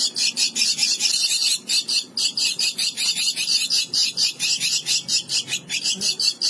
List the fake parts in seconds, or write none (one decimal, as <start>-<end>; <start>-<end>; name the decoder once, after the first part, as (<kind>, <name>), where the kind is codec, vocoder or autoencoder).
none